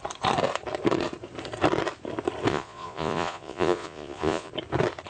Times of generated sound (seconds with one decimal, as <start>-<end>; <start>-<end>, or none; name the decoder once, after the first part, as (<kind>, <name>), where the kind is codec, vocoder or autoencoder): 2.5-4.5 (vocoder, Vocos)